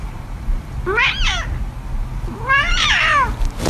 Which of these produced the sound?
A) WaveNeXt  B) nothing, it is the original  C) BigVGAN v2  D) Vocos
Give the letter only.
B